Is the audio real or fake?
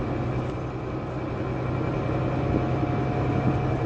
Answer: real